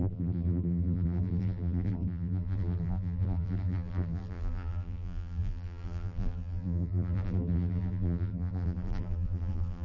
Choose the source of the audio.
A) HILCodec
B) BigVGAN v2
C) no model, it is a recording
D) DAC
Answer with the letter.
B